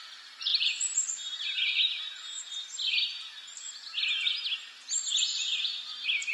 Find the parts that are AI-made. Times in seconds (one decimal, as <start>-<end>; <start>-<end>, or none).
0.5-1.1